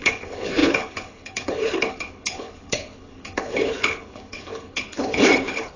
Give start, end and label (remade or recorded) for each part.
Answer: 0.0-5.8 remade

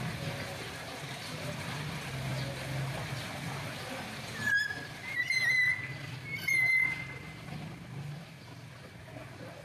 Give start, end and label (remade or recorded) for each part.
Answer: 0.0-9.6 recorded